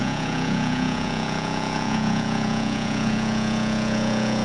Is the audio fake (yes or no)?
yes